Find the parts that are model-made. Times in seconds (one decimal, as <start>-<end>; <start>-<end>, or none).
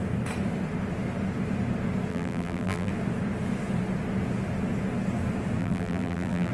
2.1-2.9; 5.6-6.5